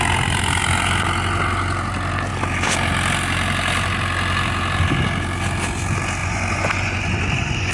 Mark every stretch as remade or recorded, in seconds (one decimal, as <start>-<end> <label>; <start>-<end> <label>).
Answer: 0.0-6.2 recorded; 6.2-7.7 remade